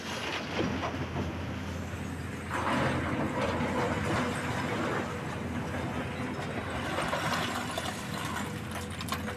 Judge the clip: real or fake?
real